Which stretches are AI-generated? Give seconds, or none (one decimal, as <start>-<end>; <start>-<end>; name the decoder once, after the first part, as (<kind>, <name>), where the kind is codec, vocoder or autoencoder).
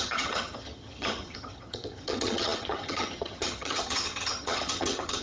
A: 0.0-5.2 (vocoder, HiFi-GAN)